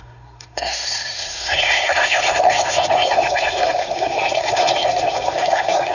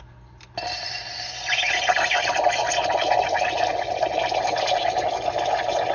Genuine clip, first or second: second